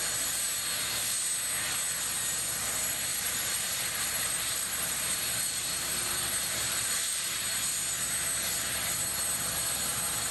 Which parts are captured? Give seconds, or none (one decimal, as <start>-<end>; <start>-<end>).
0.0-3.1; 7.4-10.3